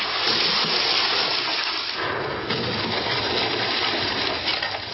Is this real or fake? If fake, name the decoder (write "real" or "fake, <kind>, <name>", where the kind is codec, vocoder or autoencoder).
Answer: real